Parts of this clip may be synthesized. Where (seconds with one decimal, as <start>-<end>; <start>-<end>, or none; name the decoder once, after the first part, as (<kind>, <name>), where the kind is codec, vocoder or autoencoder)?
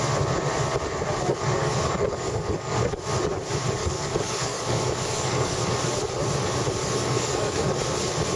1.3-2.8 (codec, DAC); 3.8-5.6; 6.8-7.8